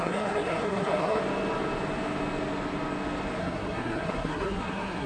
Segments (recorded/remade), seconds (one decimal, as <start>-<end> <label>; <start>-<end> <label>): 0.0-1.2 remade; 1.2-3.4 recorded; 3.4-5.1 remade